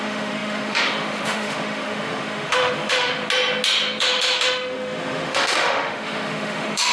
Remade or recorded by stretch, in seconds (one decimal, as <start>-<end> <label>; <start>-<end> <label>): 0.0-3.2 remade; 3.2-4.0 recorded; 4.0-6.9 remade